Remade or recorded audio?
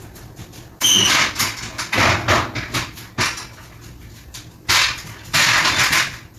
recorded